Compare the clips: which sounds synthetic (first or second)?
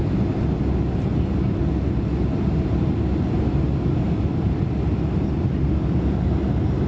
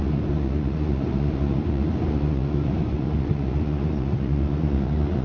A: second